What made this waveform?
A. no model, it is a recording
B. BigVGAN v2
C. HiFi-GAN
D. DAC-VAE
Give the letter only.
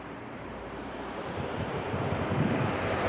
B